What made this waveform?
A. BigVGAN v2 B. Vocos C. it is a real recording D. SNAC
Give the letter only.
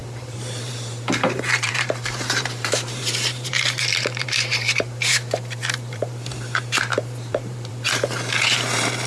A